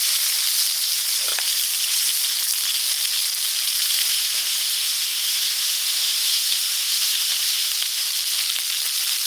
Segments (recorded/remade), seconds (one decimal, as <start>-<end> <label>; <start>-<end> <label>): 0.0-4.0 recorded; 4.0-8.1 remade; 8.1-9.3 recorded